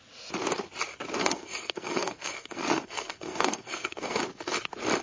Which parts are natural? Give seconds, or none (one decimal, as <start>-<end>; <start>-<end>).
0.0-1.2; 4.2-5.0